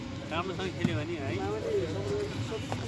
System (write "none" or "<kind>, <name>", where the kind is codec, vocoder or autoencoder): none